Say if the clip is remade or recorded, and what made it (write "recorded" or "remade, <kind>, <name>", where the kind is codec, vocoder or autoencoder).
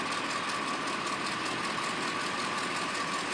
recorded